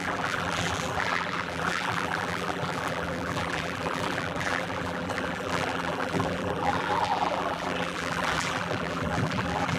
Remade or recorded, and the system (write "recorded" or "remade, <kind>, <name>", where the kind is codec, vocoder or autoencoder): remade, vocoder, BigVGAN v2